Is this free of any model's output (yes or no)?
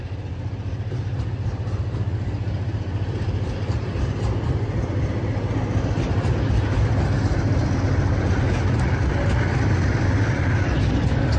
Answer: yes